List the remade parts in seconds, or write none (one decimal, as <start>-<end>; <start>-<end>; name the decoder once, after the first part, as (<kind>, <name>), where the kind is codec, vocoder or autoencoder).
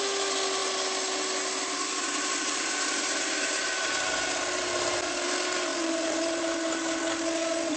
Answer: 5.7-7.0 (vocoder, BigVGAN v2)